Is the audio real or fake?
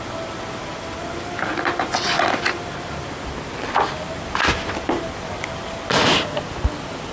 real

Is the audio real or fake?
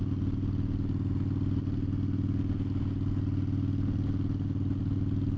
real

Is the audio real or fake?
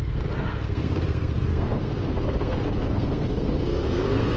fake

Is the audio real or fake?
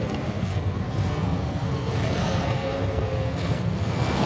fake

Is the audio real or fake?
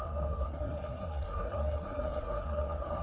fake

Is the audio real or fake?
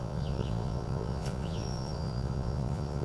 fake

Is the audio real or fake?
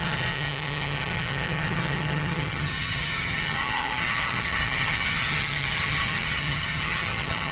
fake